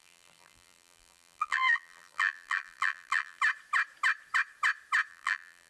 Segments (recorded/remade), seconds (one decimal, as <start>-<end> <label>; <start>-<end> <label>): 0.0-3.4 remade; 3.4-5.1 recorded; 5.1-5.7 remade